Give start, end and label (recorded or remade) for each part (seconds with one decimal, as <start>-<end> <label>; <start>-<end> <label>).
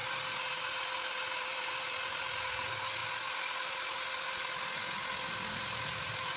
0.0-6.4 recorded